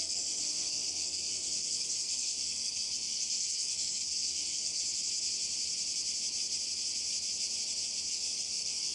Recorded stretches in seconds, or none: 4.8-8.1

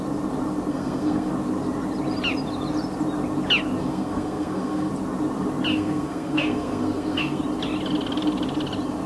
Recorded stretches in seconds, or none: 0.0-0.7; 1.3-3.8; 4.9-5.7; 7.4-9.1